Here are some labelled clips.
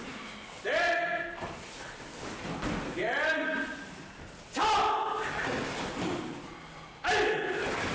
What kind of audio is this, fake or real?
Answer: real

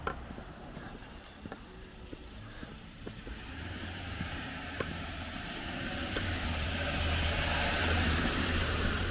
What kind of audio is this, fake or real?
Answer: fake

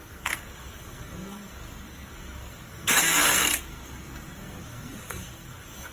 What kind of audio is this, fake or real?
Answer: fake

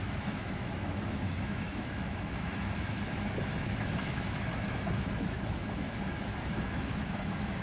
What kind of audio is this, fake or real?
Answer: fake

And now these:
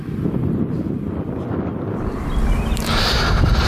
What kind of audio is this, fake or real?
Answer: real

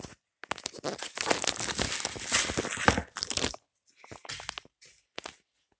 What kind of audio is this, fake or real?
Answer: real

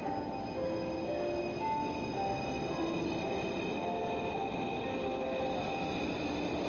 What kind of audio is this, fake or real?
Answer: real